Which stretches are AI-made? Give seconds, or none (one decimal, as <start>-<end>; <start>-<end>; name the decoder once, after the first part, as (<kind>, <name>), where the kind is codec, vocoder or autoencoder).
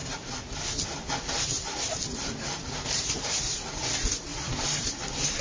none